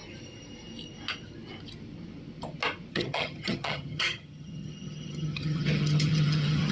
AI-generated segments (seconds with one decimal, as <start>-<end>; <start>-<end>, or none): 2.9-6.7